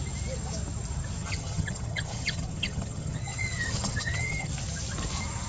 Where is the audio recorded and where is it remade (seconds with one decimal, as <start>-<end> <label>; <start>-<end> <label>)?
0.0-1.2 recorded; 1.2-4.5 remade; 4.5-5.5 recorded